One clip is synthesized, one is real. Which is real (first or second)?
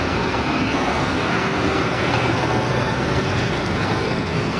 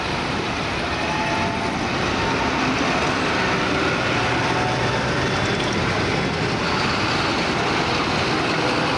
second